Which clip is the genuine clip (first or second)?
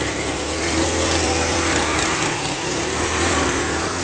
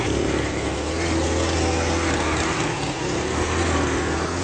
second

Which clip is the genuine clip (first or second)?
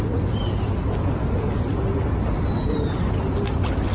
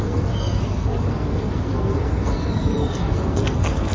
first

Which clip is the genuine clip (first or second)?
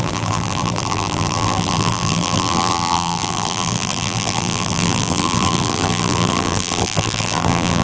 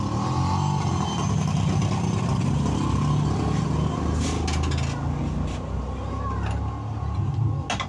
second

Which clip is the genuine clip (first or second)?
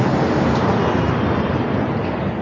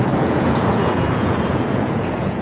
first